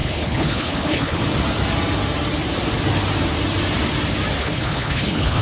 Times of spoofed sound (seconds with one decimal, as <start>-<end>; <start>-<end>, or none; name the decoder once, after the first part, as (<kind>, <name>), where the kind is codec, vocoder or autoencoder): 0.0-1.2 (codec, HILCodec); 4.4-5.4